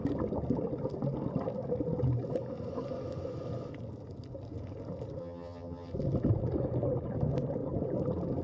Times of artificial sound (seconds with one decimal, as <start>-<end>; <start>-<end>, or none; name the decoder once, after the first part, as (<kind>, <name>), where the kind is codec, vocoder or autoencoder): 5.2-5.9 (vocoder, HiFi-GAN)